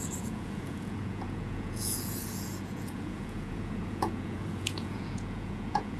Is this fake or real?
fake